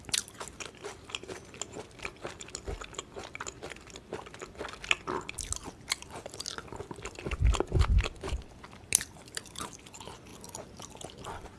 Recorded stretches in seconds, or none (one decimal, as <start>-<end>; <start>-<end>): 0.0-11.6